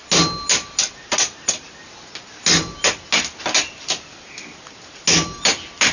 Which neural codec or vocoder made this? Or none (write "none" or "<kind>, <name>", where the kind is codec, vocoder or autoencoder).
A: none